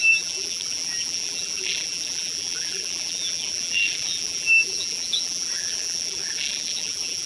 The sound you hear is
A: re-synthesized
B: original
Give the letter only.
A